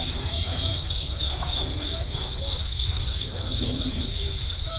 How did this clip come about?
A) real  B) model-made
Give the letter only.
B